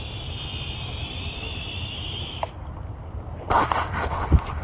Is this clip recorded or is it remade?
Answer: recorded